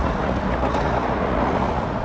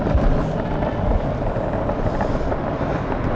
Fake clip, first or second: first